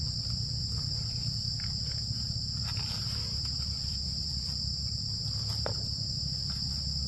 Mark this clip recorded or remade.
recorded